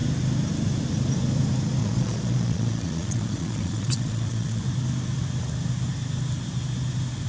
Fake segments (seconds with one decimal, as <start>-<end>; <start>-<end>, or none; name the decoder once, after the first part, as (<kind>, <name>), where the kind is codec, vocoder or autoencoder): 1.8-4.6 (vocoder, Vocos)

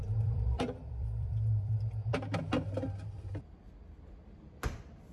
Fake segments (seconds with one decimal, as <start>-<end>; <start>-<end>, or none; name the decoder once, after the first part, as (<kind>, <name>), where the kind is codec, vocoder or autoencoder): 0.0-2.1 (vocoder, BigVGAN v2)

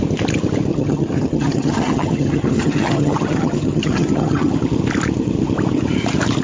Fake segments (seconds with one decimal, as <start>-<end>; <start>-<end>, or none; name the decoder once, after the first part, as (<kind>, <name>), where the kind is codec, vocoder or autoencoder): 0.7-4.5 (vocoder, HiFi-GAN)

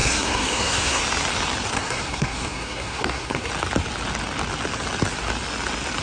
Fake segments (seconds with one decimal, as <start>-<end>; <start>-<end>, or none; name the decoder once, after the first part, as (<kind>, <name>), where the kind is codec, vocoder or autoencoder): 0.0-1.0 (codec, SNAC); 1.7-3.5

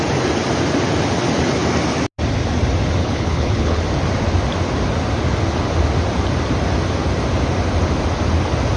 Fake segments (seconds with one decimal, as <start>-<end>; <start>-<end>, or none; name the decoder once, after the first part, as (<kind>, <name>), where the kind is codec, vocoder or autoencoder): 3.0-3.8 (codec, HILCodec)

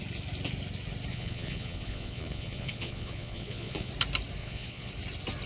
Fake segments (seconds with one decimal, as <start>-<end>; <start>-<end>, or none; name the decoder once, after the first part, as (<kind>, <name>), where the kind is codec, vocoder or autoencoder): 1.1-3.9 (vocoder, Vocos); 4.4-4.9

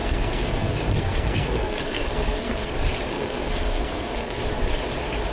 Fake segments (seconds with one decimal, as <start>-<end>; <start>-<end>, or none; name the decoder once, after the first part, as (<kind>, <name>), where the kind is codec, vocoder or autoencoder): 0.0-2.7 (codec, SNAC); 3.1-4.4